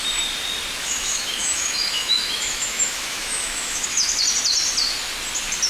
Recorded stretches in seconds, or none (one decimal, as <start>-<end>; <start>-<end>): 0.0-0.8; 4.2-5.7